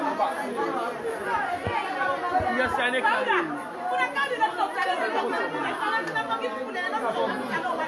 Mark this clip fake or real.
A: real